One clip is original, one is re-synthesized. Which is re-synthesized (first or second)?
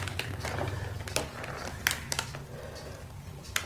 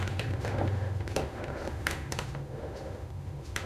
second